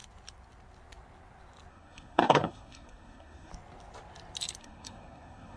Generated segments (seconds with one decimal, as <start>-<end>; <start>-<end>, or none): 1.7-3.5; 4.6-5.6